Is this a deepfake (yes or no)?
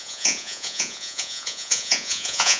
yes